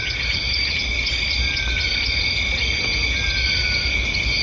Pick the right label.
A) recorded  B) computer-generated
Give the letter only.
A